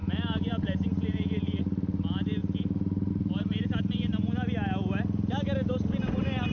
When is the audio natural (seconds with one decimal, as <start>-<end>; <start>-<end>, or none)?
1.6-6.5